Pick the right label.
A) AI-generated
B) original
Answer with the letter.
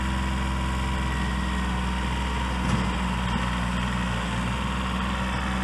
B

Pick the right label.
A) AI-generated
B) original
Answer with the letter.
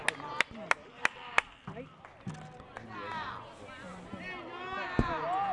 B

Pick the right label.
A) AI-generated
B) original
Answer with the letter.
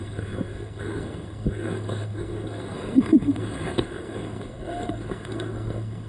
A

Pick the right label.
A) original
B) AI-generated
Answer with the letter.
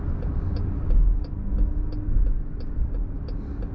A